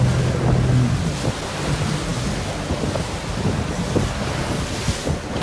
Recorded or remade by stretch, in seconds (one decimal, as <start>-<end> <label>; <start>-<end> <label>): 0.0-5.4 recorded